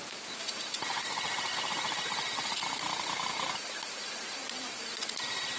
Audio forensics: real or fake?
fake